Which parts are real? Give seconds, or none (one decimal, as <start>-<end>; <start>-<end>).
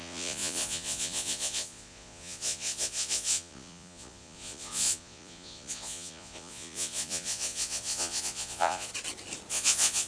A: 8.9-9.5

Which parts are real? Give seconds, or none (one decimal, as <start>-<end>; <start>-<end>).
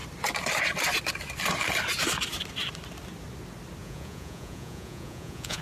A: 0.0-3.8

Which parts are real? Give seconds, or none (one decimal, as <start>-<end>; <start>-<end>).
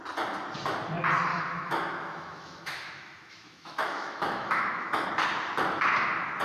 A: 0.0-1.3; 5.1-6.4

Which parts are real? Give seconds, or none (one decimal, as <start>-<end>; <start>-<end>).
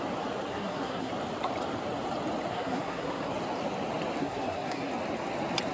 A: 0.0-0.5; 1.1-2.5; 3.3-4.2; 4.9-5.7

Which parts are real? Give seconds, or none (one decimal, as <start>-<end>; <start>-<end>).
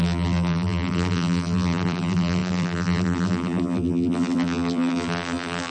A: none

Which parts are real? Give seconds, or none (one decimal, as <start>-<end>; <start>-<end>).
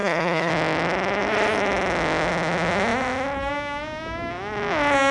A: 0.5-5.1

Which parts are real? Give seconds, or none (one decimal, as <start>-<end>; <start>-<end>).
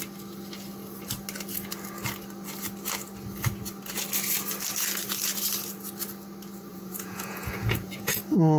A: 0.0-6.7; 8.2-8.6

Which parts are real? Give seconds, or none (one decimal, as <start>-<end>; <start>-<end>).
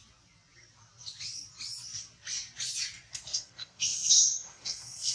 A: 0.0-3.1